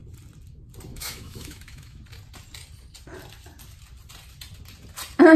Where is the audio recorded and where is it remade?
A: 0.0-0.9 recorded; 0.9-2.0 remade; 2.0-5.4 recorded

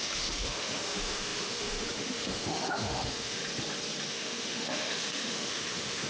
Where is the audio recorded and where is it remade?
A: 0.0-3.4 remade; 3.4-4.1 recorded; 4.1-6.1 remade

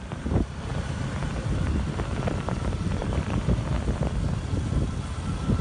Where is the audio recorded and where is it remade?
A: 0.0-5.6 recorded

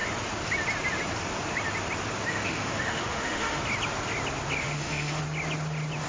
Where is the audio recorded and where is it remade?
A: 0.0-2.3 recorded; 2.3-3.6 remade; 3.6-4.6 recorded; 4.6-5.2 remade; 5.2-6.1 recorded